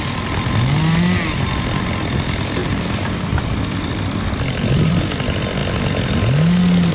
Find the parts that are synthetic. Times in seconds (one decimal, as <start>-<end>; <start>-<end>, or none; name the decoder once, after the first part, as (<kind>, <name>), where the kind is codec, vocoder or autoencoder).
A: 2.6-4.9 (vocoder, BigVGAN v2)